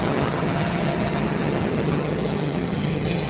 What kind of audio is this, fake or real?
fake